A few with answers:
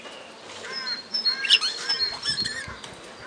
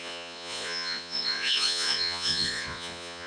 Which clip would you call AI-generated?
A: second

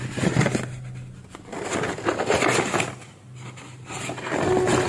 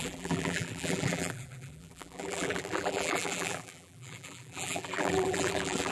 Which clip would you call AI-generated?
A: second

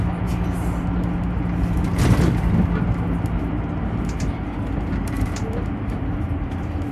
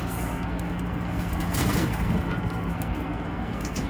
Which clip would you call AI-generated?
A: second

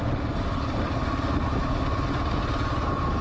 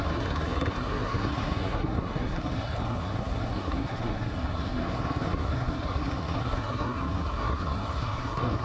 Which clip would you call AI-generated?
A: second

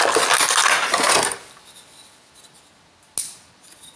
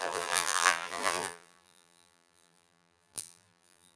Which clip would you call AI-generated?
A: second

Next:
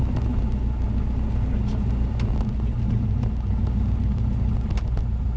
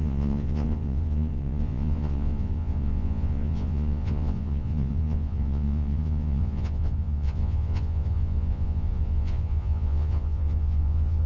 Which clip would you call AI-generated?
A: second